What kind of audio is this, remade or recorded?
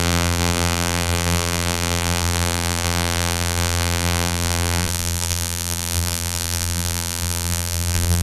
remade